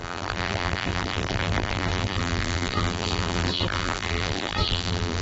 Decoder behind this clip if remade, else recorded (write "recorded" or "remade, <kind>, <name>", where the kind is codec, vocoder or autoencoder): remade, vocoder, BigVGAN v2